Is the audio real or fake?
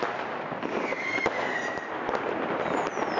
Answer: real